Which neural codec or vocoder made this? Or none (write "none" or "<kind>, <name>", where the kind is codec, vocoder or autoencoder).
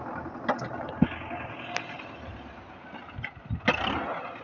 none